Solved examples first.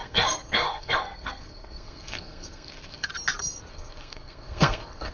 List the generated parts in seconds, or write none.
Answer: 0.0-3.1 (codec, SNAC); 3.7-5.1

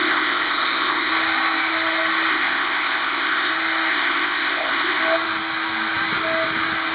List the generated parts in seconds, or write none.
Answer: 0.0-1.1 (codec, ZipCodec); 2.3-3.5; 3.9-5.0

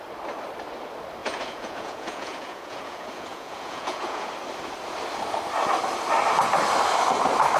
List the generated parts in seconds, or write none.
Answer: 1.2-4.3 (vocoder, Vocos)

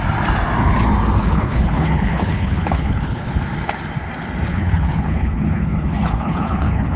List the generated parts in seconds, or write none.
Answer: 1.2-3.3 (codec, HILCodec); 4.5-7.0